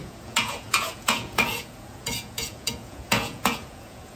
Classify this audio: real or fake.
fake